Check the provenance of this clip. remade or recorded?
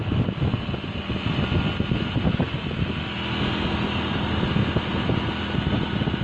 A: recorded